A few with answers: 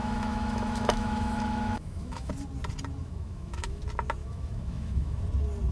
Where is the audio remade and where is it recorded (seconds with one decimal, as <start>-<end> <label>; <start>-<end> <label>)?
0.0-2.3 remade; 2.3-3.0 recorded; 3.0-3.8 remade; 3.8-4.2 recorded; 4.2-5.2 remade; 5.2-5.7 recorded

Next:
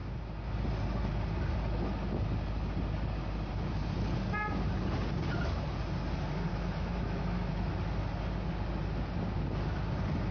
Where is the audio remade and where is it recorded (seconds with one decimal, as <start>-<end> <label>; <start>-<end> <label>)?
0.0-6.5 recorded; 6.5-7.7 remade; 7.7-10.3 recorded

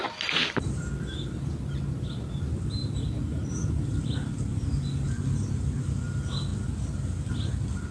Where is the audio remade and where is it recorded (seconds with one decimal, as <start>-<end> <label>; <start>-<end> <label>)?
0.0-7.9 recorded

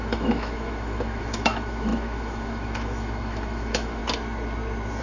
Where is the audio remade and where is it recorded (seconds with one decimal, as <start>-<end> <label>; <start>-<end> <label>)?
0.0-4.0 remade; 4.0-5.0 recorded